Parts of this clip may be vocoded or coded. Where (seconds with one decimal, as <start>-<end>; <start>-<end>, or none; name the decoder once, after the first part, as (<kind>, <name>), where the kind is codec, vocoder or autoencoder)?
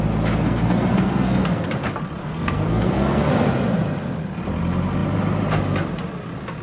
0.4-1.7 (codec, SNAC); 2.2-3.3